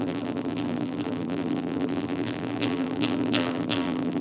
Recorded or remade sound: remade